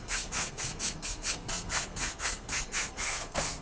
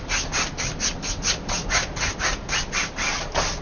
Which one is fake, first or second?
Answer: first